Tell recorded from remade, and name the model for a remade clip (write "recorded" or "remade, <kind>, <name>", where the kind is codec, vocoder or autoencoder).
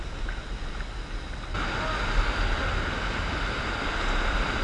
recorded